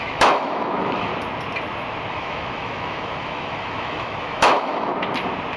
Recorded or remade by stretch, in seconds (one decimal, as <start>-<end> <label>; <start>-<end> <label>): 0.0-1.1 remade; 1.1-2.1 recorded; 2.1-4.9 remade; 4.9-5.6 recorded